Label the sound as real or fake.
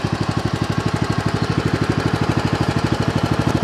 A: real